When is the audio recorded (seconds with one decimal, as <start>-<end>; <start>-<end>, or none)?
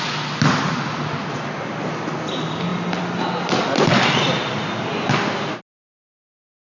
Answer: 0.0-6.6